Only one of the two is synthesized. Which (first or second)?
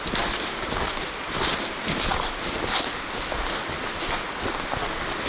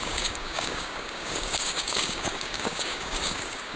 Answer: second